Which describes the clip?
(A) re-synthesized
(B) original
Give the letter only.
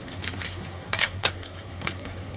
A